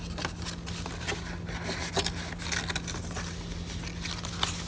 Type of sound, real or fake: real